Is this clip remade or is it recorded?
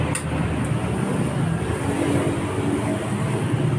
recorded